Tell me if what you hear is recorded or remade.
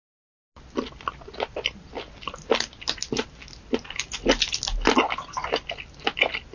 recorded